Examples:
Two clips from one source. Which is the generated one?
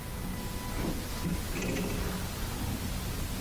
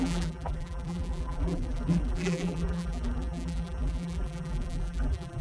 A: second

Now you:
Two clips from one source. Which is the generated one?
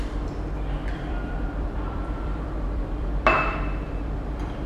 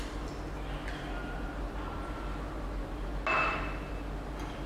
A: first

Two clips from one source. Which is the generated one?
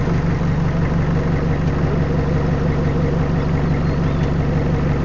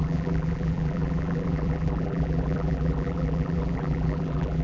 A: second